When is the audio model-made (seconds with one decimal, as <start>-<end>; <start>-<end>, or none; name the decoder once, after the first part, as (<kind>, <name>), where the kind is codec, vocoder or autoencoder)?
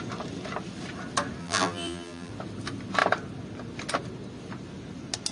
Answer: 1.4-2.3 (vocoder, BigVGAN v2)